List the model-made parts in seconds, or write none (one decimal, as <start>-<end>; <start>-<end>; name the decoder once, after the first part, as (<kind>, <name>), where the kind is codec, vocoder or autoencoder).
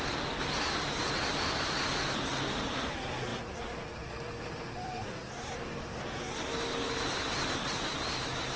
none